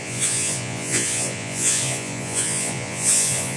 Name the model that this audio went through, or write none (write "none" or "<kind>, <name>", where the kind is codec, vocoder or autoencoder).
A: vocoder, Vocos